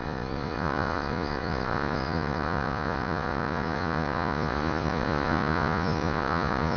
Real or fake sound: fake